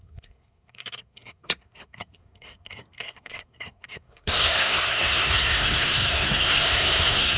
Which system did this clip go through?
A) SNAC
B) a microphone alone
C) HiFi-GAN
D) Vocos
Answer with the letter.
A